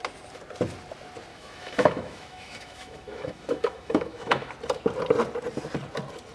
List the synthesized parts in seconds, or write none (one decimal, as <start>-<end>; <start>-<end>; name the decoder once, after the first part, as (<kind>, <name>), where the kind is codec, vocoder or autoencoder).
1.3-4.5 (autoencoder, DAC-VAE)